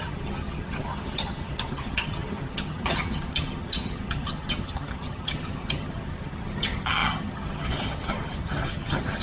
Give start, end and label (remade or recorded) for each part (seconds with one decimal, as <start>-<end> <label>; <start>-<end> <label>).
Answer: 0.0-9.2 remade